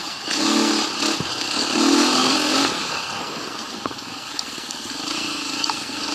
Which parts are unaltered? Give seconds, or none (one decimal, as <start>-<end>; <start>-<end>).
0.7-1.3